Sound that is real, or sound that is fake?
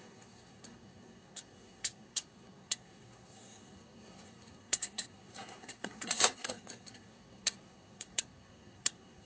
fake